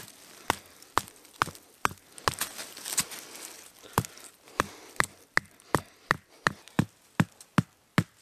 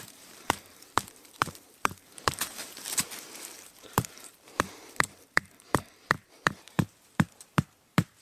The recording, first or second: first